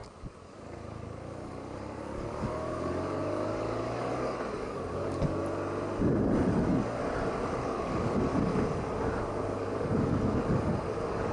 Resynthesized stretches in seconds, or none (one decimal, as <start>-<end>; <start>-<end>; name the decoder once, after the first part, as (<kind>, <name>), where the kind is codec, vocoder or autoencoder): 0.0-5.4 (codec, DAC); 6.5-7.0; 7.6-8.5; 9.2-11.3